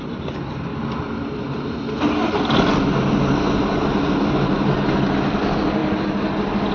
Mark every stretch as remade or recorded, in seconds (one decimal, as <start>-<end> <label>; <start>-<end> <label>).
0.0-6.7 recorded